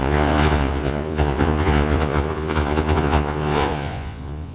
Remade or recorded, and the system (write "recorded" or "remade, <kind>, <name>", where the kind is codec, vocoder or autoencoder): remade, vocoder, Vocos